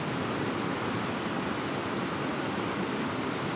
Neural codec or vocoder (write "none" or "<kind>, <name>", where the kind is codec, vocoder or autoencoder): none